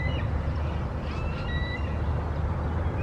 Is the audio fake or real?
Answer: real